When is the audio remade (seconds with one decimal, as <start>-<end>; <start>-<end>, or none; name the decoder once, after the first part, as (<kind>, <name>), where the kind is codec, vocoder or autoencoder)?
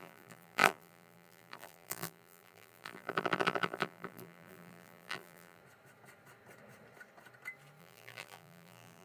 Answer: 0.0-5.6 (vocoder, BigVGAN v2); 7.8-9.0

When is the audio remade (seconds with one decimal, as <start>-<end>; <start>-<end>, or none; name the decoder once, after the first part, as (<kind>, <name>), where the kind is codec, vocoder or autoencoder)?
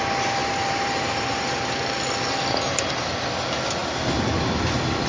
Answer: 0.4-1.3 (vocoder, BigVGAN v2)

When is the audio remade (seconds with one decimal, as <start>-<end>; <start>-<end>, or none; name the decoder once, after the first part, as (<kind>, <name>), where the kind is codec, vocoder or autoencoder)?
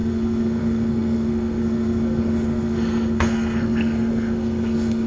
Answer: 0.0-5.1 (codec, SNAC)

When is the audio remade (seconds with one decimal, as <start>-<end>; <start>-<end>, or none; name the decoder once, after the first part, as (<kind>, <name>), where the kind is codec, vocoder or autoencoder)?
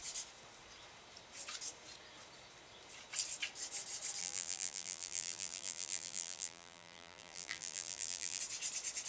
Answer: 4.2-8.4 (vocoder, BigVGAN v2)